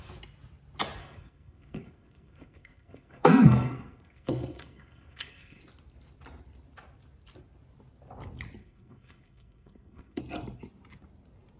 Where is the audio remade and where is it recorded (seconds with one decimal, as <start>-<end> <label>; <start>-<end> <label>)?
0.0-1.0 recorded; 1.0-5.6 remade; 5.6-8.6 recorded; 8.6-10.2 remade; 10.2-11.6 recorded